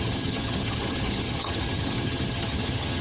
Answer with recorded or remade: remade